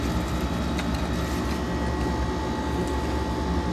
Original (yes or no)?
yes